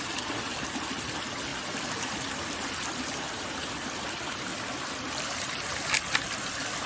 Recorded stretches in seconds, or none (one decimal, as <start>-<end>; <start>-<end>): 0.0-1.5; 3.7-4.5; 5.5-6.9